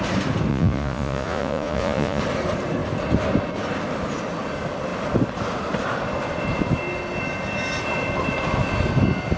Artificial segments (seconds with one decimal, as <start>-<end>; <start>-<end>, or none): 0.5-2.2